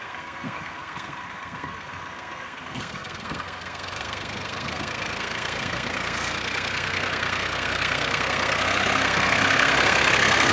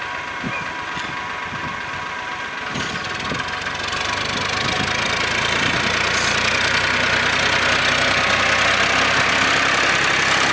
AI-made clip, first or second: first